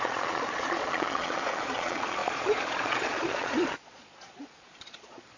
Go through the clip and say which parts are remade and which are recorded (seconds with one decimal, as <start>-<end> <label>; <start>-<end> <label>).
0.0-5.4 remade